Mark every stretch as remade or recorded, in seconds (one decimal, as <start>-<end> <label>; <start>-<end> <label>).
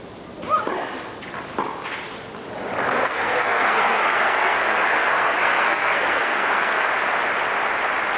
0.0-3.0 recorded; 3.0-6.9 remade; 6.9-8.2 recorded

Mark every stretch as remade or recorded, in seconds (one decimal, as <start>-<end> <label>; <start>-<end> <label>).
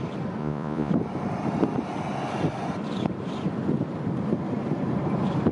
0.0-0.4 recorded; 0.4-0.9 remade; 0.9-5.5 recorded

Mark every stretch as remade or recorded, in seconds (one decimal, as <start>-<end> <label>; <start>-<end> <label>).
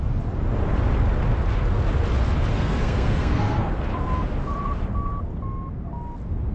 0.0-2.5 recorded; 2.5-3.7 remade; 3.7-6.5 recorded